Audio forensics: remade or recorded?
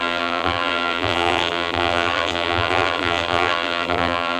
remade